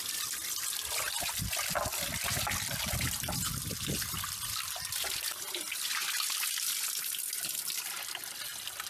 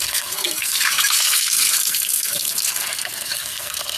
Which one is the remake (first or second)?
second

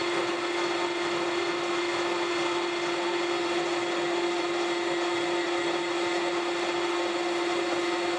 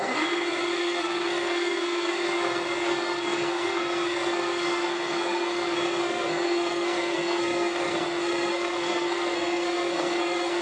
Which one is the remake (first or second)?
second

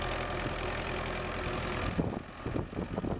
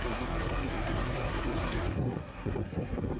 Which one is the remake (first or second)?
second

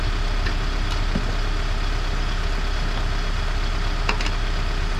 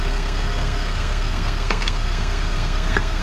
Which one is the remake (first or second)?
second